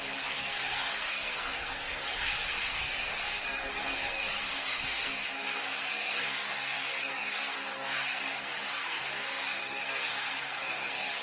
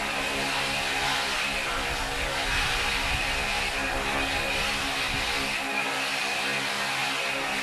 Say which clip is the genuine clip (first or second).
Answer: second